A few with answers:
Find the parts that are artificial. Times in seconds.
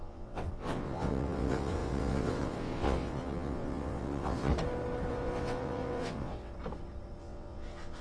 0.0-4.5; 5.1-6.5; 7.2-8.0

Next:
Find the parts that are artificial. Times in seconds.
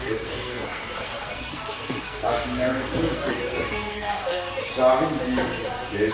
0.0-4.7